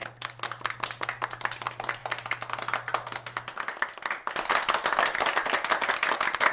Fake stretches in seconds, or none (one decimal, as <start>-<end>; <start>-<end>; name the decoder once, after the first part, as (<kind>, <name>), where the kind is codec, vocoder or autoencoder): none